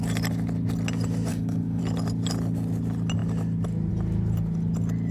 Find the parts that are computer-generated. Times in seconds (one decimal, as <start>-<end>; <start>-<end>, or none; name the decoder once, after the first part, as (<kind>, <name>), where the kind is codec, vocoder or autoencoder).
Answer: 1.3-1.8 (codec, DAC)